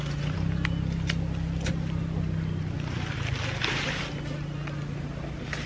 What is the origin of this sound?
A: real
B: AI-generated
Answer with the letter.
A